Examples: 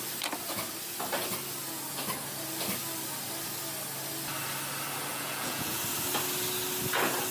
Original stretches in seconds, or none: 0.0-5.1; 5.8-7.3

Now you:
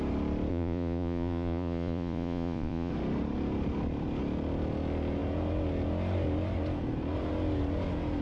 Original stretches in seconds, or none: 0.0-0.5; 2.9-8.2

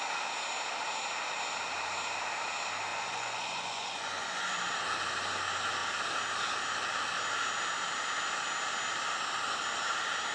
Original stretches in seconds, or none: 0.0-2.9; 4.6-10.3